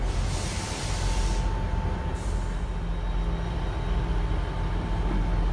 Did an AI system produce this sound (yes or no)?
no